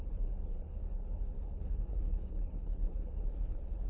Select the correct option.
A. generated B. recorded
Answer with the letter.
A